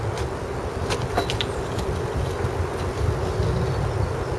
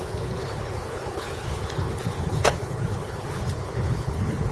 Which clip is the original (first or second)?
first